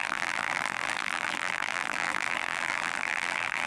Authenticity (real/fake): fake